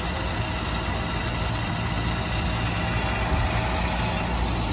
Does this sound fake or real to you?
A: real